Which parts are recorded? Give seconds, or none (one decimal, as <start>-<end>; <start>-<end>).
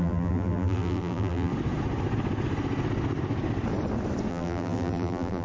1.5-4.3